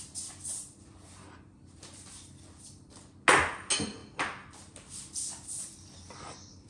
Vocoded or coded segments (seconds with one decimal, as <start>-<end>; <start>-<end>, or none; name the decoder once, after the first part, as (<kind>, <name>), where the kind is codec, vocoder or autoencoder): none